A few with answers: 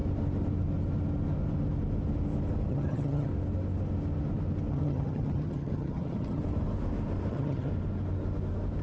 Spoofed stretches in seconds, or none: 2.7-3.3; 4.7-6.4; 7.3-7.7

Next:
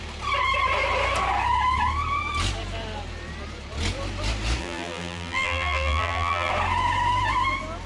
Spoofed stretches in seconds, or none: 4.6-6.5

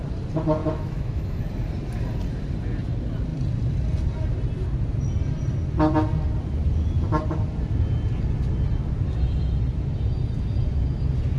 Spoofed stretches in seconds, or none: 0.6-1.4

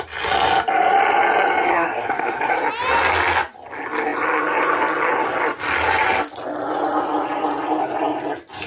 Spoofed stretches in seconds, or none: 1.7-2.5

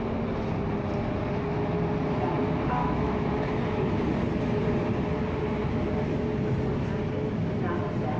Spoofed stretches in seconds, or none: 2.8-3.6

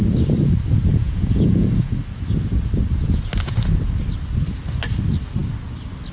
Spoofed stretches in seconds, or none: 0.9-1.9

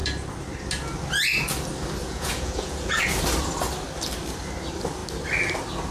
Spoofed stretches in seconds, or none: 2.0-3.0

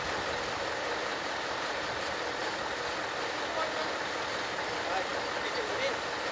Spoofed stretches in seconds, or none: 1.1-2.0; 5.1-5.7